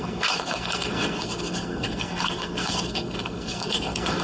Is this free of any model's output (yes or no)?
no